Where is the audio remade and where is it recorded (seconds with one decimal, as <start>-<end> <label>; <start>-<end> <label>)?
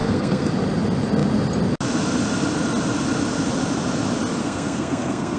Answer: 0.0-0.5 remade; 0.5-4.4 recorded; 4.4-5.4 remade